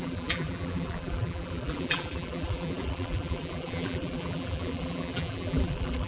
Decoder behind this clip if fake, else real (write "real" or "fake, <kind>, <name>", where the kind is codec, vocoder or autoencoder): fake, vocoder, BigVGAN v2